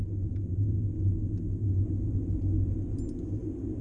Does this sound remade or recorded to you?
recorded